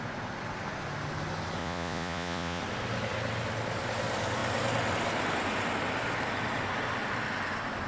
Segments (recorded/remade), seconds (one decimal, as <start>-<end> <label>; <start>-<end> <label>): 0.0-1.6 recorded; 1.6-2.6 remade; 2.6-7.9 recorded

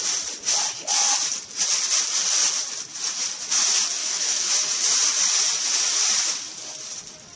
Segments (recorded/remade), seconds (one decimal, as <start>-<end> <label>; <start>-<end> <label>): 0.0-4.0 recorded; 4.0-4.5 remade; 4.5-7.4 recorded

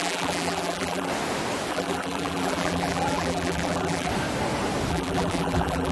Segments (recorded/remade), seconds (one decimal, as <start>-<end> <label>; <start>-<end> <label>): 0.0-1.1 remade; 1.1-1.7 recorded; 1.7-4.1 remade; 4.1-4.9 recorded; 4.9-5.9 remade